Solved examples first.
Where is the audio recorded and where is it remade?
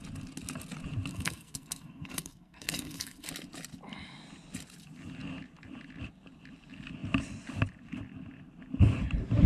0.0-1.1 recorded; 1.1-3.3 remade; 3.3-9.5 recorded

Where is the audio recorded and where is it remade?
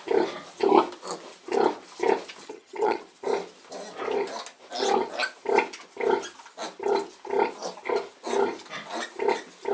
0.0-2.4 recorded; 2.4-3.0 remade; 3.0-9.7 recorded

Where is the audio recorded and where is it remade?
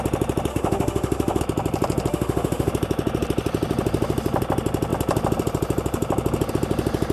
0.0-0.5 recorded; 0.5-1.4 remade; 1.4-2.1 recorded; 2.1-2.7 remade; 2.7-7.1 recorded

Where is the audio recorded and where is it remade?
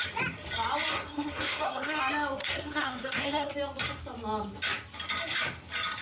0.0-0.9 recorded; 0.9-2.0 remade; 2.0-2.4 recorded; 2.4-3.5 remade; 3.5-6.0 recorded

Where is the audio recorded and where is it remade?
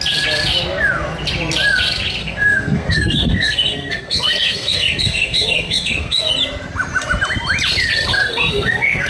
0.0-2.2 recorded; 2.2-6.3 remade; 6.3-8.3 recorded; 8.3-9.1 remade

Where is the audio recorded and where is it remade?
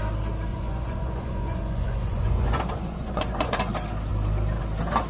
0.0-0.5 recorded; 0.5-3.6 remade; 3.6-5.1 recorded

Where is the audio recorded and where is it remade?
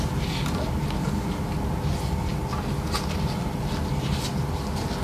0.0-5.0 recorded